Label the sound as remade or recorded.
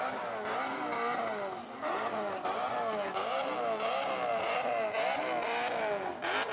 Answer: recorded